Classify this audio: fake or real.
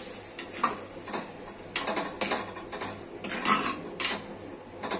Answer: real